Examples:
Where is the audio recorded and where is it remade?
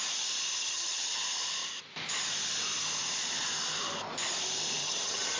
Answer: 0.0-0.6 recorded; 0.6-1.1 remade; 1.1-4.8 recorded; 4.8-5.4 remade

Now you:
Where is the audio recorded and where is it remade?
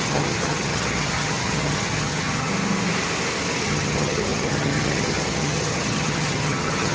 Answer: 0.0-2.5 remade; 2.5-3.6 recorded; 3.6-6.9 remade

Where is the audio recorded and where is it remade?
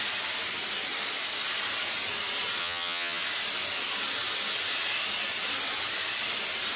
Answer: 0.0-2.6 recorded; 2.6-3.2 remade; 3.2-6.8 recorded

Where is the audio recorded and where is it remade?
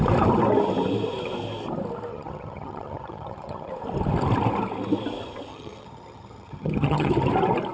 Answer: 0.0-2.1 recorded; 2.1-3.7 remade; 3.7-5.5 recorded; 5.5-7.1 remade; 7.1-7.7 recorded